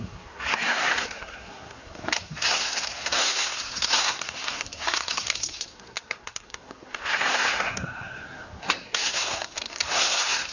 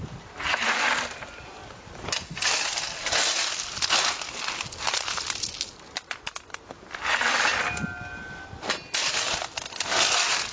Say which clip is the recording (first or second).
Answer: second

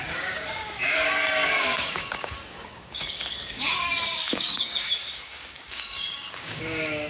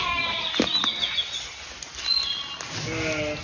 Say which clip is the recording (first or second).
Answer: second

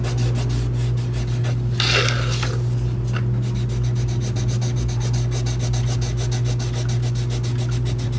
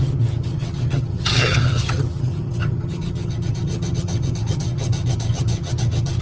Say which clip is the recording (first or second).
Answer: first